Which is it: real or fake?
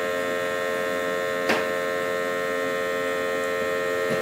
real